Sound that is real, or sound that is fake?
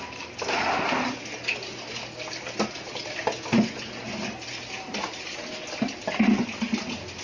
real